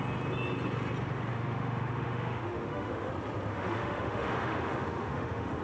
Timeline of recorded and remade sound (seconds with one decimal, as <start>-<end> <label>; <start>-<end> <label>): 0.0-1.3 recorded; 1.3-3.1 remade; 3.1-3.5 recorded; 3.5-5.6 remade